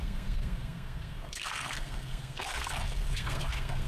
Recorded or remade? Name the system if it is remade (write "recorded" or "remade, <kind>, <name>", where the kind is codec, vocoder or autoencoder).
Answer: remade, codec, SNAC